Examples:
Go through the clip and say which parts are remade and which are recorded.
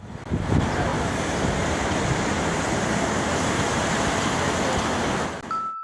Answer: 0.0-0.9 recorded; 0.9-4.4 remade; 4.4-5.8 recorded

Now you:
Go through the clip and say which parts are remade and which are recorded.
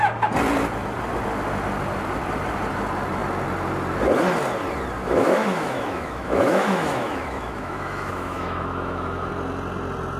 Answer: 0.0-5.0 recorded; 5.0-9.3 remade; 9.3-10.2 recorded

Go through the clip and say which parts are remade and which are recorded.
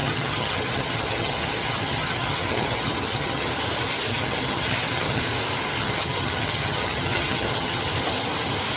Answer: 0.0-3.5 remade; 3.5-4.1 recorded; 4.1-5.2 remade; 5.2-5.8 recorded; 5.8-7.8 remade; 7.8-8.8 recorded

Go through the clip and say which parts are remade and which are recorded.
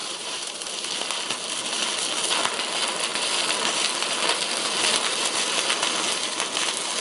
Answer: 0.0-0.7 remade; 0.7-7.0 recorded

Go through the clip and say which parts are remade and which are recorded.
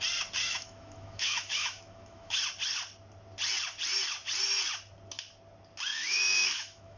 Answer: 0.0-0.4 recorded; 0.4-2.4 remade; 2.4-5.9 recorded; 5.9-7.0 remade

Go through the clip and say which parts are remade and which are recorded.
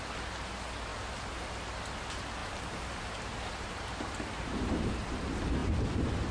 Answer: 0.0-2.4 recorded; 2.4-4.9 remade; 4.9-6.3 recorded